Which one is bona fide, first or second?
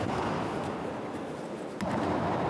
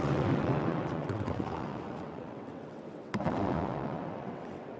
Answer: first